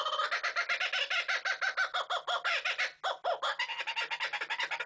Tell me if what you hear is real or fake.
real